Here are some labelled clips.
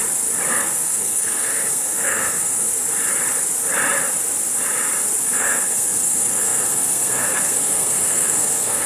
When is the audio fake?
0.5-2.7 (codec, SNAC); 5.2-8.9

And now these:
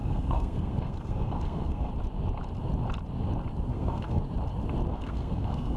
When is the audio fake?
0.0-1.9 (codec, SNAC); 3.7-4.2; 4.9-5.8

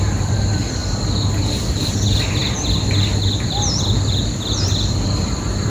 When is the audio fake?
none